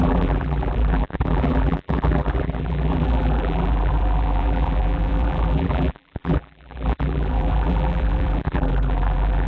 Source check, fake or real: fake